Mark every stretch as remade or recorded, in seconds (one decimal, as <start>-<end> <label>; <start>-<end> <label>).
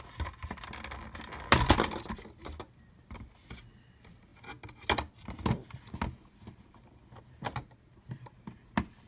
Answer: 0.0-9.1 recorded